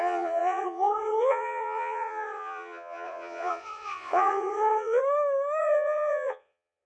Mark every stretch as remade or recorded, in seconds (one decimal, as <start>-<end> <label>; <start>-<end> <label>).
0.0-5.0 remade; 5.0-5.6 recorded; 5.6-6.9 remade